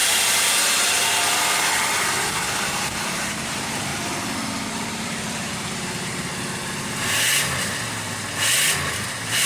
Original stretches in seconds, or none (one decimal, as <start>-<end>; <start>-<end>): 3.9-4.7; 6.3-9.1